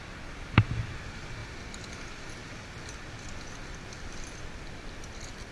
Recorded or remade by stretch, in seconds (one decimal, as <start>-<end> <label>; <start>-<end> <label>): 0.0-5.5 recorded

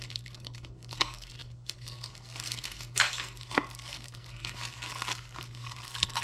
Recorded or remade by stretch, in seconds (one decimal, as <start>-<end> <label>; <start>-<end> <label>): 0.0-6.2 remade